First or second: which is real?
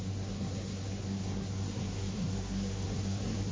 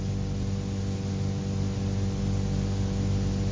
second